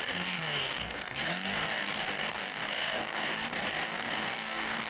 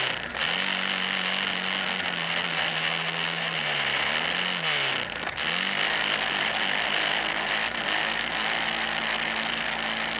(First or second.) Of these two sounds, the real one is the second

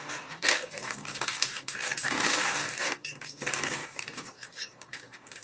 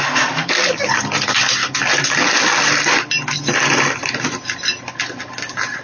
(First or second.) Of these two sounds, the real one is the second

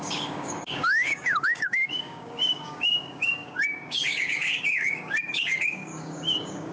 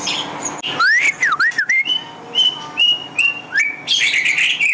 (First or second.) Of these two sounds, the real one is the second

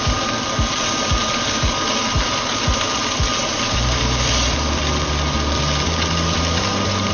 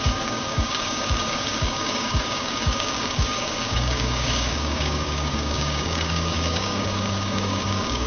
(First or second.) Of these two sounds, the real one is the first